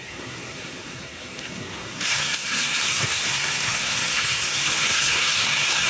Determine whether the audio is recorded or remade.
remade